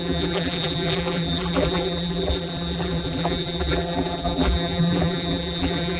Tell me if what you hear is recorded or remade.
remade